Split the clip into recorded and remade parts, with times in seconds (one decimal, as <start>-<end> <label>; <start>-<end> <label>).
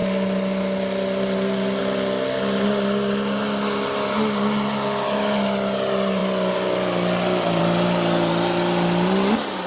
0.0-9.7 recorded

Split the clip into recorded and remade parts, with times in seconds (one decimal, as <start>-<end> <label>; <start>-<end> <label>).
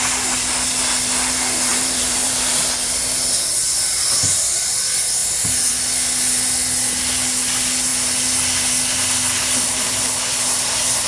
0.0-1.7 recorded; 1.7-2.7 remade; 2.7-5.2 recorded; 5.2-5.7 remade; 5.7-11.1 recorded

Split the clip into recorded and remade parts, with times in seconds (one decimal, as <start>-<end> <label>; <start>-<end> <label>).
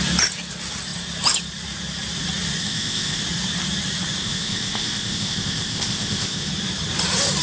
0.0-2.6 recorded; 2.6-3.2 remade; 3.2-4.2 recorded; 4.2-6.5 remade; 6.5-7.4 recorded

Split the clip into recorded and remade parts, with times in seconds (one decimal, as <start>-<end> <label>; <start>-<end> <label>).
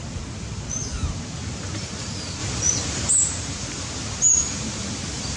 0.0-2.4 recorded; 2.4-3.1 remade; 3.1-5.4 recorded